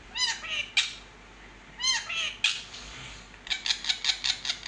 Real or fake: real